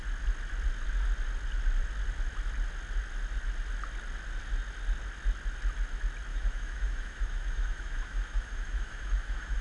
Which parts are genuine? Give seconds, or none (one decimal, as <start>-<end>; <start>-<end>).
0.0-6.3